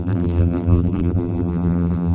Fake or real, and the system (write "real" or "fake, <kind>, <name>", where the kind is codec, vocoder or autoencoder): fake, vocoder, BigVGAN v2